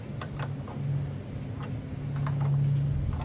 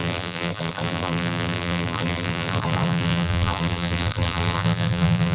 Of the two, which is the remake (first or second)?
second